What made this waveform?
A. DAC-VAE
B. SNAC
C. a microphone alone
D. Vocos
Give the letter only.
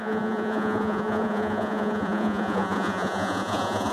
D